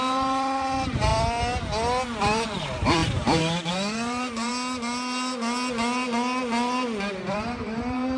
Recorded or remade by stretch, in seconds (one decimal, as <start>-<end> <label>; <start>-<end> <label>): 0.0-1.1 remade; 1.1-2.2 recorded; 2.2-4.5 remade; 4.5-7.1 recorded; 7.1-8.2 remade